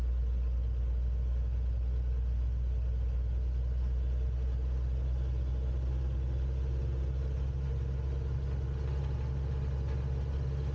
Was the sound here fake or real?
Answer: real